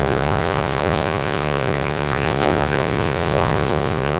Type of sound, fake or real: fake